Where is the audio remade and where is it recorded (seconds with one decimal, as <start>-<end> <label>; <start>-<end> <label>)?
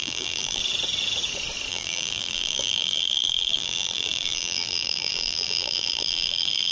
0.0-0.6 remade; 0.6-1.7 recorded; 1.7-6.7 remade